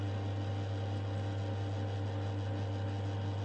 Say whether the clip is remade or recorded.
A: recorded